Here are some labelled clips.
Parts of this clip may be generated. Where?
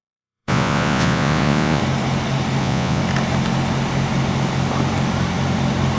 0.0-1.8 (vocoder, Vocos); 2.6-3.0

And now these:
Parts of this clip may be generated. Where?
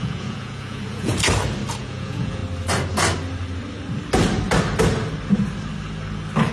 0.0-1.1 (vocoder, Vocos); 1.8-2.4